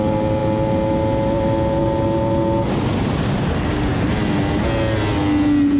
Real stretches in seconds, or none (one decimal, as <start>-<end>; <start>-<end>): 0.0-5.8